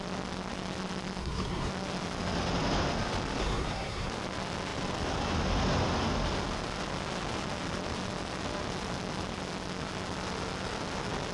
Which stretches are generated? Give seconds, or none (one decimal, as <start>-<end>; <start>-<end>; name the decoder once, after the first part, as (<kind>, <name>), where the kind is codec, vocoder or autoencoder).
1.2-1.7 (codec, SNAC); 3.4-4.1